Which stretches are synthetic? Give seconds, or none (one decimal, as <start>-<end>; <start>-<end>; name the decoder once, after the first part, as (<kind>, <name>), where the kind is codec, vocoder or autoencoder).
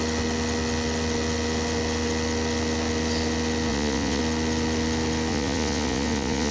3.7-4.2 (vocoder, Vocos); 5.3-6.5